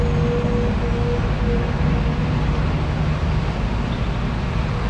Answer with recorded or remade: recorded